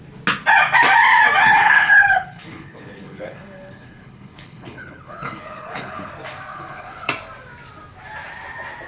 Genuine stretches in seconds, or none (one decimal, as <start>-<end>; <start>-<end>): 0.0-1.4; 6.1-6.5; 7.1-8.9